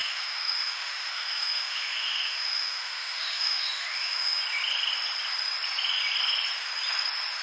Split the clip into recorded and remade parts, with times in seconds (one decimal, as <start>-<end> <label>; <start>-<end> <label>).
0.0-4.4 remade; 4.4-7.4 recorded